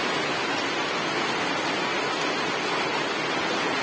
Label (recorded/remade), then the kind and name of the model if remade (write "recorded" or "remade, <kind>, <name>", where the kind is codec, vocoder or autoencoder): recorded